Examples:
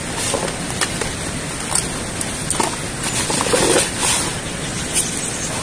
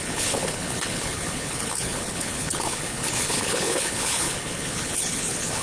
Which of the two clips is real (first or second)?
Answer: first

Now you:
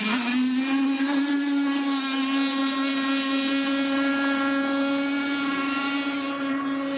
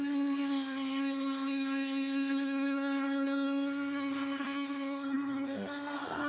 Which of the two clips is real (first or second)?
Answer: first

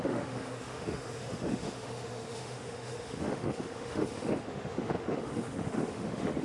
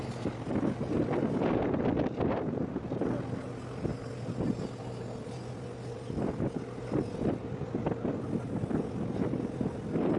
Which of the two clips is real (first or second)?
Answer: second